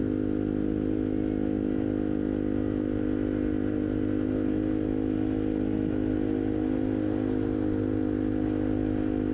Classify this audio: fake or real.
real